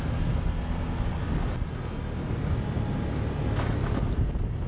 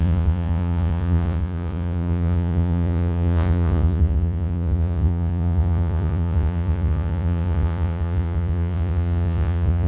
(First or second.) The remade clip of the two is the second